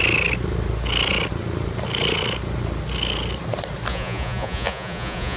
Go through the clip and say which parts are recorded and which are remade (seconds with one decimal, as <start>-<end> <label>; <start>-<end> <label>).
0.0-3.9 recorded; 3.9-5.4 remade